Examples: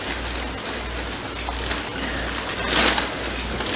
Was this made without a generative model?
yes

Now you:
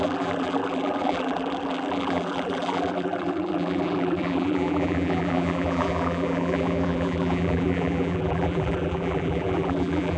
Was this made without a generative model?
no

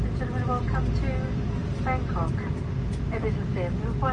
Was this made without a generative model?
yes